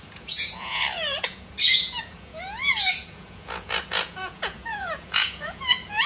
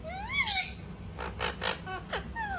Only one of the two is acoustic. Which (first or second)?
second